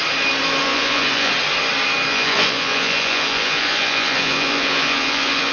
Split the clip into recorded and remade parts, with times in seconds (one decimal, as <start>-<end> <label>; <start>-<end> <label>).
0.0-0.6 recorded; 0.6-1.3 remade; 1.3-2.1 recorded; 2.1-5.5 remade